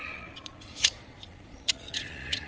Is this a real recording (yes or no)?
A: no